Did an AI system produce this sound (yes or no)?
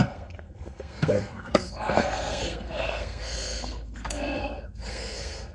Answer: yes